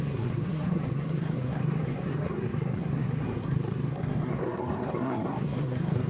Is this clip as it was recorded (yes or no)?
no